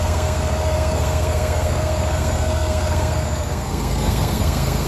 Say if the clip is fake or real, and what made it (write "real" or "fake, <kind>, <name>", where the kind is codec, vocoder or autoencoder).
fake, codec, SNAC